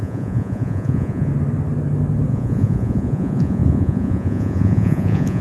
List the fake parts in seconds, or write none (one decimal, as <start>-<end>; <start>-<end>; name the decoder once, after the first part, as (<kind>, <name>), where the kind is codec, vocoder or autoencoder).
0.0-1.3 (vocoder, Vocos); 2.3-5.4